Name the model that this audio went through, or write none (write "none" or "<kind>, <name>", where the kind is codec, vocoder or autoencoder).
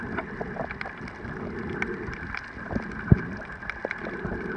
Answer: none